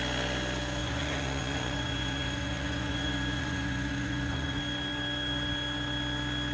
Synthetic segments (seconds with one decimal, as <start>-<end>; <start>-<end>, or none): 0.8-4.6